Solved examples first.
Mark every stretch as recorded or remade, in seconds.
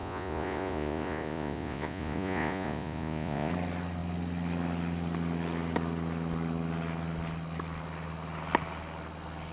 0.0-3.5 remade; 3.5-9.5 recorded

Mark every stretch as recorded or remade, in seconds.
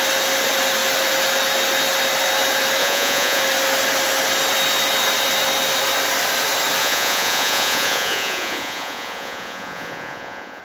0.0-2.8 recorded; 2.8-3.4 remade; 3.4-6.8 recorded; 6.8-10.6 remade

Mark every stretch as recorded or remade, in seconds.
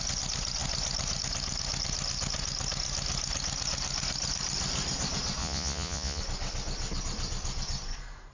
0.0-5.4 recorded; 5.4-6.2 remade; 6.2-8.3 recorded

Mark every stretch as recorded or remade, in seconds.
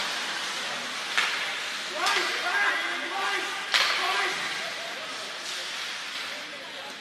0.0-7.0 recorded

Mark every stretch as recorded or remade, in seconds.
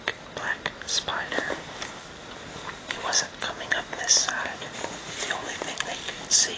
0.0-4.5 recorded; 4.5-5.3 remade; 5.3-6.6 recorded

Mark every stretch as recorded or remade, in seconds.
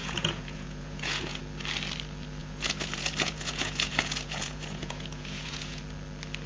0.0-1.4 remade; 1.4-2.4 recorded; 2.4-5.8 remade; 5.8-6.5 recorded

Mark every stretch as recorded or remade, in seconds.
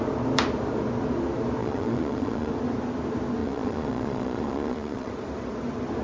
0.0-1.6 recorded; 1.6-2.5 remade; 2.5-3.4 recorded; 3.4-5.1 remade; 5.1-6.0 recorded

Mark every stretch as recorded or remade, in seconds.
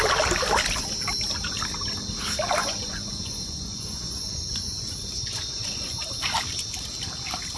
0.0-2.6 recorded; 2.6-6.0 remade; 6.0-7.6 recorded